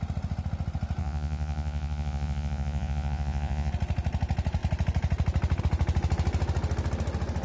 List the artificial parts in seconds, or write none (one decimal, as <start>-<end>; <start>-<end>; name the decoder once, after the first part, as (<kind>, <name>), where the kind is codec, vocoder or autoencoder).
1.0-3.7 (vocoder, Vocos)